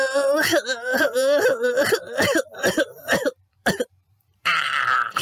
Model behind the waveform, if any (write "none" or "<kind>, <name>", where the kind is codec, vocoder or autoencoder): vocoder, BigVGAN v2